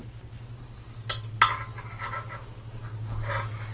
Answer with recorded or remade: recorded